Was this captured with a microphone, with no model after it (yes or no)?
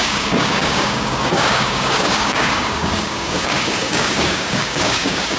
no